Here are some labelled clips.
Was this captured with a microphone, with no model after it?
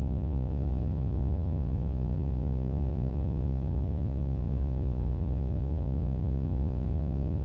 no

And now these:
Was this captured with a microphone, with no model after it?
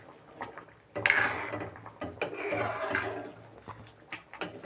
yes